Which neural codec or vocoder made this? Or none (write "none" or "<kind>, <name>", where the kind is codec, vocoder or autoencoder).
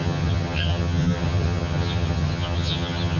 vocoder, HiFi-GAN